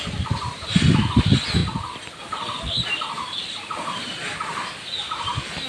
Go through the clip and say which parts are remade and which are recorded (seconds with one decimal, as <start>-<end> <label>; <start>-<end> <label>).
0.0-5.7 recorded